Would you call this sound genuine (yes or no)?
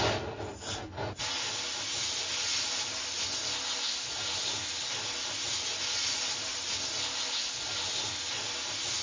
yes